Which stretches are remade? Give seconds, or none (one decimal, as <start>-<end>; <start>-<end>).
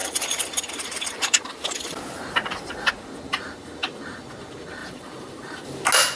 0.0-2.9; 4.8-5.8